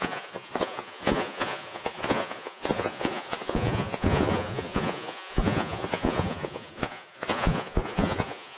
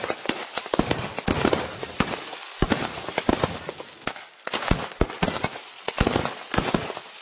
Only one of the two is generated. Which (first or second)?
first